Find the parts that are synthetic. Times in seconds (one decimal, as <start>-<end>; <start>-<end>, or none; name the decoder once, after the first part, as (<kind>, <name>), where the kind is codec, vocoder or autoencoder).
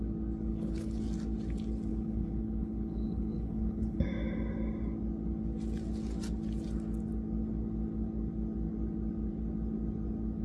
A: 0.5-1.0 (codec, HILCodec); 1.9-4.0